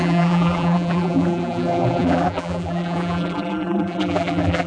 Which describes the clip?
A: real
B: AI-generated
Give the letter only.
B